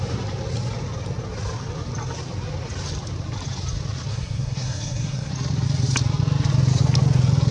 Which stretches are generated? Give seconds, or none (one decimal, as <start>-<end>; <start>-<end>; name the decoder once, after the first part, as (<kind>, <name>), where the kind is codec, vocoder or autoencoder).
4.1-5.3 (codec, SNAC)